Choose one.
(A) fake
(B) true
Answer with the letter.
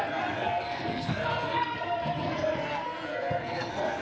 A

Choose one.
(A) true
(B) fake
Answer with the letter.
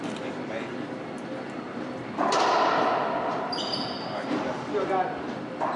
A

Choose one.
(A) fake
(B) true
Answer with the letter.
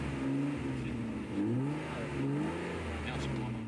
B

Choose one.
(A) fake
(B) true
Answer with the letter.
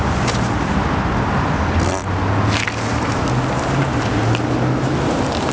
B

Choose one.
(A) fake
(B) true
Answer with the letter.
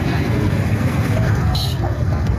A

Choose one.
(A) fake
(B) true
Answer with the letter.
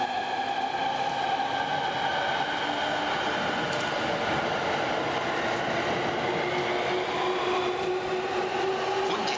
B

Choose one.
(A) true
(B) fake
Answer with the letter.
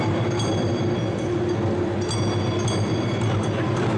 A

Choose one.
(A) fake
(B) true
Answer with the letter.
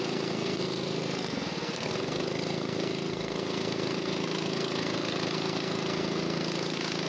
A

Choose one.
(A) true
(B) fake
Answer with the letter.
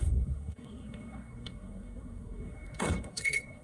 B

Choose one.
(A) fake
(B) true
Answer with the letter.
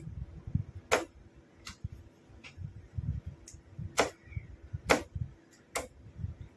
B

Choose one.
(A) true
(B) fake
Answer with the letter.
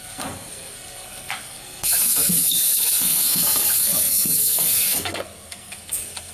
B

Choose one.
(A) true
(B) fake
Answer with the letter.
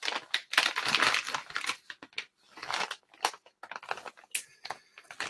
A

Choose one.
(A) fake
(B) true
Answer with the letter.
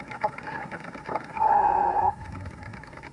A